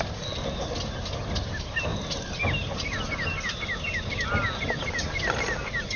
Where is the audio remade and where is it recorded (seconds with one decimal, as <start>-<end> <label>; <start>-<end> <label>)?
0.0-6.0 recorded